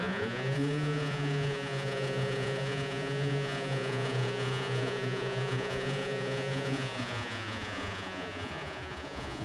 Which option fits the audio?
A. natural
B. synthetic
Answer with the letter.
B